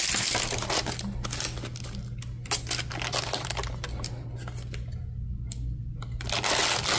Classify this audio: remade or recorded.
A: recorded